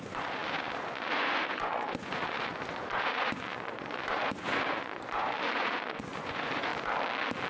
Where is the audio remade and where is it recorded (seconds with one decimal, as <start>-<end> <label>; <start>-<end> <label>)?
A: 0.0-6.7 remade; 6.7-7.5 recorded